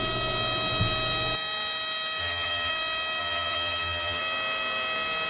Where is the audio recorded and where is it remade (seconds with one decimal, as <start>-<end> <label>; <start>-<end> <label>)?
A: 0.0-2.2 recorded; 2.2-2.7 remade; 2.7-3.2 recorded; 3.2-4.2 remade; 4.2-5.3 recorded